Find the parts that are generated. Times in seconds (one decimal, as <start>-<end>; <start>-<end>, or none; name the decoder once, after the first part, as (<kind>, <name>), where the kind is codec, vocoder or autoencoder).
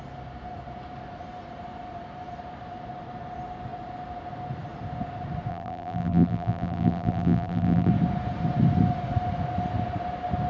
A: 5.5-7.9 (vocoder, BigVGAN v2)